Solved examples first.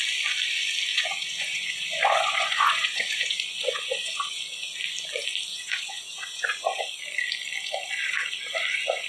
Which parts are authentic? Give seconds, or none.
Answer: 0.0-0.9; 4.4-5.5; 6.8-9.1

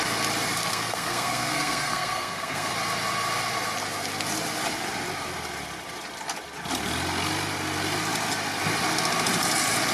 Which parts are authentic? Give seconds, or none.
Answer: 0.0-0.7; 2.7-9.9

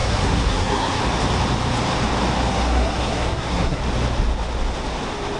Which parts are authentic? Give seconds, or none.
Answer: 1.0-2.5; 3.8-5.4

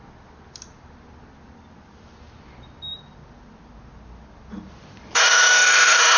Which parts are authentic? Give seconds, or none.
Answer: 0.0-5.2

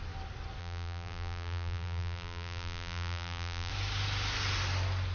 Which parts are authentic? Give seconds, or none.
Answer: 0.0-0.6; 3.7-5.1